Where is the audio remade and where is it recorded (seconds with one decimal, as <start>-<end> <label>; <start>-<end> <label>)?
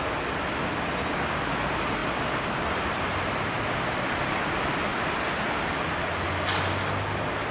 0.0-2.0 recorded; 2.0-4.4 remade; 4.4-7.5 recorded